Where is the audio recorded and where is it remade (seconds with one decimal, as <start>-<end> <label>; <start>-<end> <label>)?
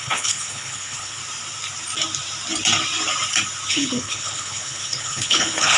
0.0-1.2 remade; 1.2-3.7 recorded; 3.7-5.8 remade